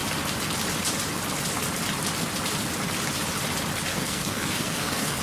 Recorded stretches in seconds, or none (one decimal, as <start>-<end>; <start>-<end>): 0.0-3.9